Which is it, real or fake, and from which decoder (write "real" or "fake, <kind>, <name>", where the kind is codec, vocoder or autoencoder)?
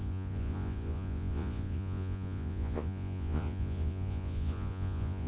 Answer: fake, vocoder, Vocos